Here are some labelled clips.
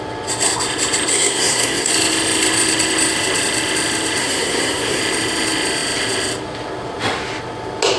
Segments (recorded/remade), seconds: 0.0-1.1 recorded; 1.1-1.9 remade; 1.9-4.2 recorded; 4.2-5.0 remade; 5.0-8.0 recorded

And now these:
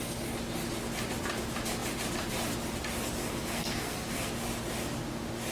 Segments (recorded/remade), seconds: 0.0-3.2 recorded; 3.2-4.3 remade; 4.3-5.5 recorded